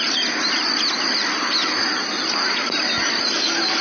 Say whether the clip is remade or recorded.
recorded